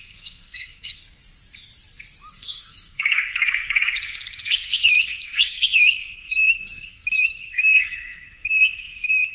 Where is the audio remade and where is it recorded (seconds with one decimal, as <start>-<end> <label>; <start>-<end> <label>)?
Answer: 0.0-1.0 remade; 1.0-2.3 recorded; 2.3-9.3 remade